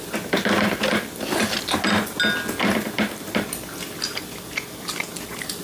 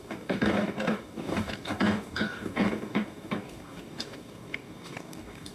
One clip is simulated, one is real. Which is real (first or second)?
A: first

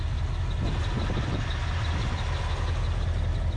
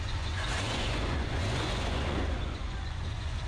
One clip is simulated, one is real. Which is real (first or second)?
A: first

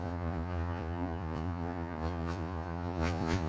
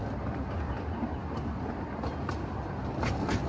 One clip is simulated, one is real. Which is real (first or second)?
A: second